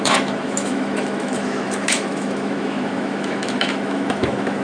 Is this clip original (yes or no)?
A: no